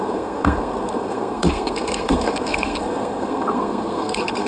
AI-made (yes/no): yes